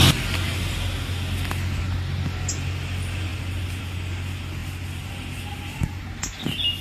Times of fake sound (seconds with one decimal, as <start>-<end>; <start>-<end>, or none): none